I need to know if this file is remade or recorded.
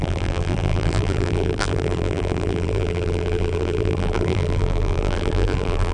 remade